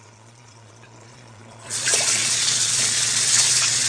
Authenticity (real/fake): fake